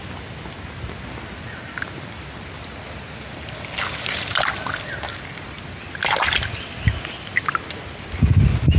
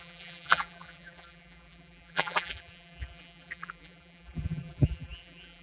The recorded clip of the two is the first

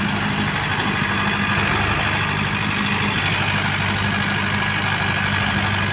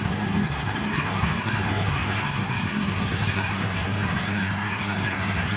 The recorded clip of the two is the first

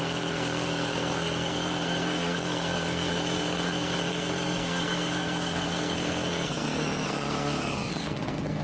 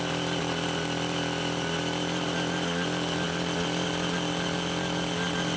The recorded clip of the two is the second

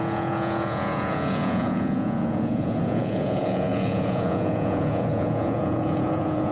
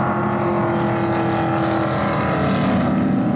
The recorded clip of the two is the second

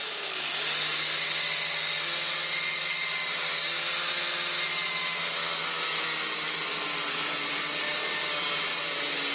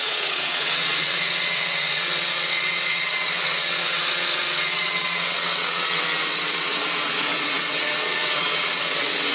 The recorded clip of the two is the first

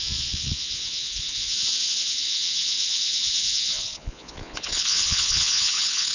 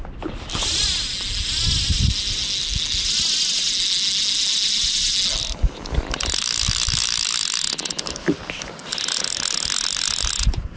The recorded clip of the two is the second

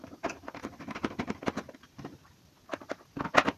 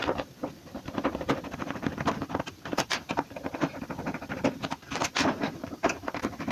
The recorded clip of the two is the first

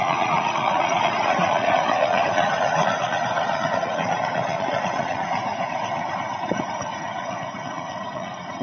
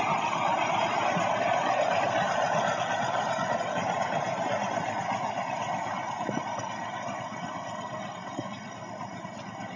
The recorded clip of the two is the second